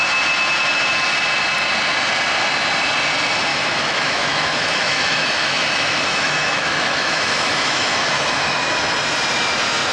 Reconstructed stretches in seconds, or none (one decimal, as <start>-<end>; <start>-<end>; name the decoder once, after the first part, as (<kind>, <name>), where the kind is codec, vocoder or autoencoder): 3.5-8.6 (autoencoder, DAC-VAE)